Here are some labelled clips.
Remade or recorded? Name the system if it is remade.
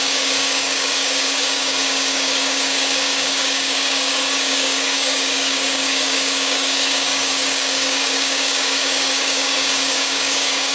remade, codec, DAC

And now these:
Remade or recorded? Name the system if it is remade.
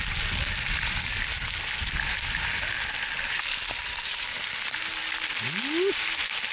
recorded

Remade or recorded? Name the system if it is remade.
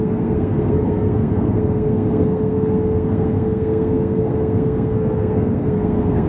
remade, codec, SNAC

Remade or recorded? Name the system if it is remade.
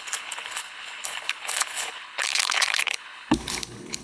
remade, codec, HILCodec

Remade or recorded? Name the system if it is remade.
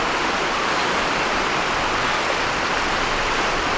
recorded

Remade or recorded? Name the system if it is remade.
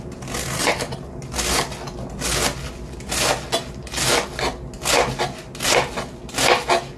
recorded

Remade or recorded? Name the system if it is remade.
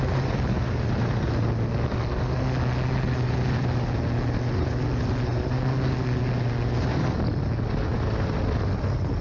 recorded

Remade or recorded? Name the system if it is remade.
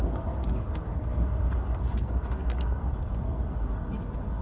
remade, codec, SNAC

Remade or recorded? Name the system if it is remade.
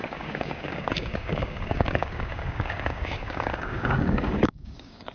remade, codec, DAC